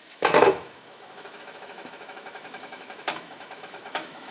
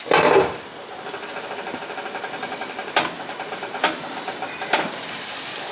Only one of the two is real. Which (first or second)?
second